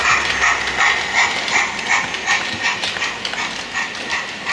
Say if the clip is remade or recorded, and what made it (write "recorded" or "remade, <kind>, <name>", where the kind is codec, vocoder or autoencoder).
recorded